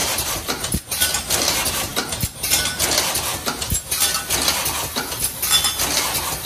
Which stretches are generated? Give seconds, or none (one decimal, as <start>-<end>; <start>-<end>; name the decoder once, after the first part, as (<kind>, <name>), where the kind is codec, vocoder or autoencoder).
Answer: 0.0-0.9 (vocoder, BigVGAN v2)